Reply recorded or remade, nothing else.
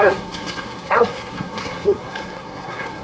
remade